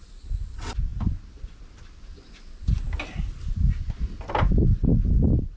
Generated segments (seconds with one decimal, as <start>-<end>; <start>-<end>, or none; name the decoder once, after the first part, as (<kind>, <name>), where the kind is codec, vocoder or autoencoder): none